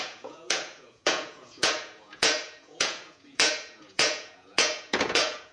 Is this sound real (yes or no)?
no